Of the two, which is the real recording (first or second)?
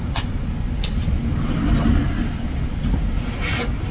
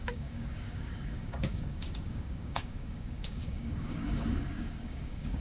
first